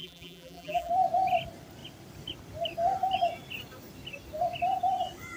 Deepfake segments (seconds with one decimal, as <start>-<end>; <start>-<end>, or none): 0.0-0.9